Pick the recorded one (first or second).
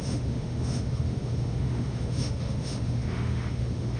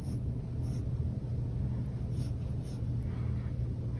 second